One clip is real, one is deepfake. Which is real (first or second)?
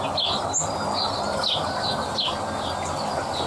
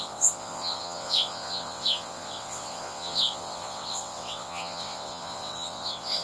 first